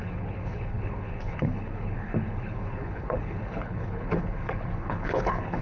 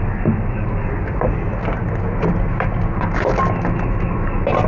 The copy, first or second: first